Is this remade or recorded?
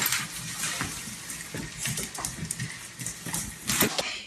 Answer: recorded